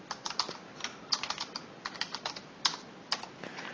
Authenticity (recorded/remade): recorded